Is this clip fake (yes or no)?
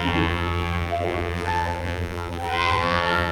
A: yes